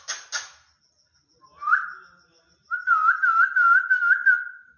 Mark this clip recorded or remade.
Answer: recorded